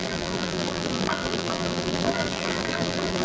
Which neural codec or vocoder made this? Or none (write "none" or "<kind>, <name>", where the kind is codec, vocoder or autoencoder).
vocoder, BigVGAN v2